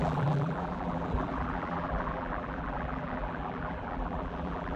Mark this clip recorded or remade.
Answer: remade